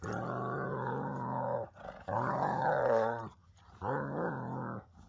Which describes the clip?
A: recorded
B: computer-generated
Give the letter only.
A